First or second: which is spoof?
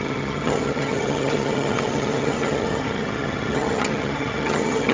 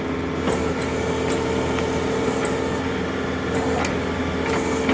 first